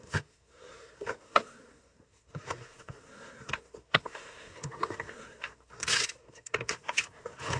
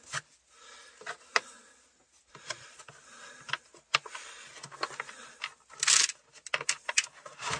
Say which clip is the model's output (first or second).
first